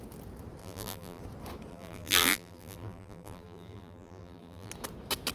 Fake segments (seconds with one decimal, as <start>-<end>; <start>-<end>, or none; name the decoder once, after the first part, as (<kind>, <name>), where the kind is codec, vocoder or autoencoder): 0.6-1.2 (vocoder, BigVGAN v2); 1.7-4.7